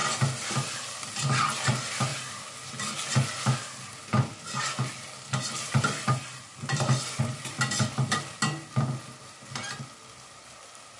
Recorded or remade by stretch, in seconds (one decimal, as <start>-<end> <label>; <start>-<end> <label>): 0.0-11.0 recorded